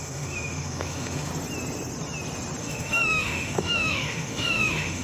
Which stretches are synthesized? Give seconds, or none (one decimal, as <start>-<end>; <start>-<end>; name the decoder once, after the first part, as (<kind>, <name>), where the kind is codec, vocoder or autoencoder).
0.0-1.3 (autoencoder, DAC-VAE); 2.6-5.0